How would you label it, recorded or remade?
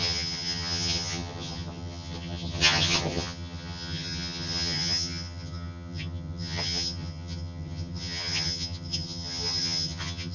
remade